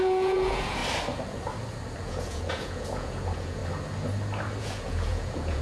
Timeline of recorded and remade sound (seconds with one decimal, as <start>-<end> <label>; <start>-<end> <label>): 0.0-0.8 remade; 0.8-2.0 recorded; 2.0-3.6 remade; 3.6-4.6 recorded; 4.6-5.6 remade